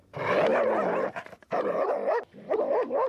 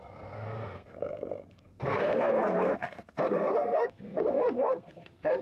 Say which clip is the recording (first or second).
first